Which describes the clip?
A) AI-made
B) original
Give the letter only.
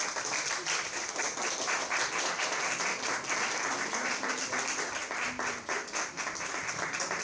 B